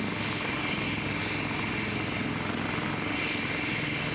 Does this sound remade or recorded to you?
recorded